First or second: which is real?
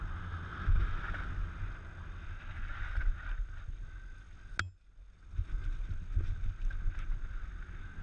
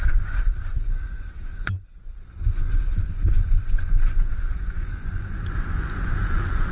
first